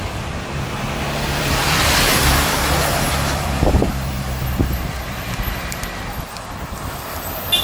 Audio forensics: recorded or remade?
remade